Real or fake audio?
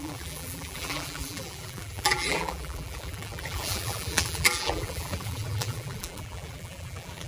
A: fake